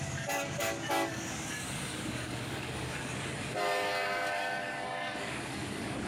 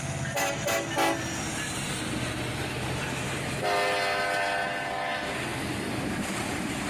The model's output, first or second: first